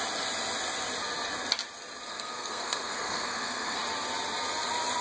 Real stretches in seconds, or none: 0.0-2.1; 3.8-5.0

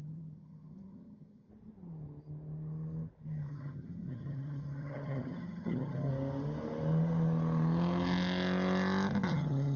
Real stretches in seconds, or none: 1.5-3.5; 6.1-9.3

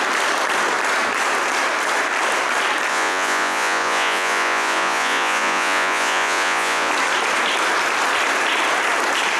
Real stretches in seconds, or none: 0.0-2.9; 6.9-9.4

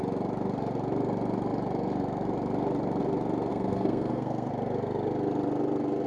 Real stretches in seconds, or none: 0.0-3.5; 4.5-6.1

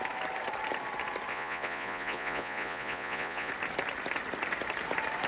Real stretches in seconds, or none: 0.0-1.3; 3.5-5.3

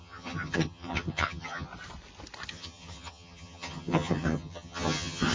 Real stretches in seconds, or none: 1.7-2.5

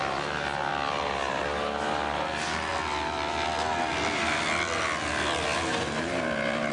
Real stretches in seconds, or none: 0.0-6.7

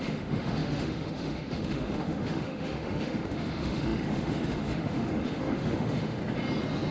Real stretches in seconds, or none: 6.2-6.9